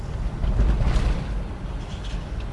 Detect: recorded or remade recorded